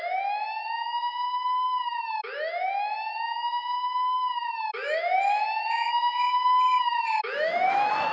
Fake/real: fake